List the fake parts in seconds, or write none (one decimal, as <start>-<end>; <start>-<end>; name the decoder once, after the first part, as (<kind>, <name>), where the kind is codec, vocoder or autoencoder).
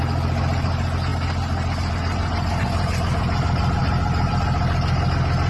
none